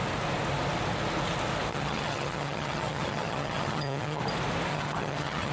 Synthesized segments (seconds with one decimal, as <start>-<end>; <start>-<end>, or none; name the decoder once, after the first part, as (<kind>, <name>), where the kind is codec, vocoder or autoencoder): 1.7-4.2 (vocoder, HiFi-GAN); 4.7-5.5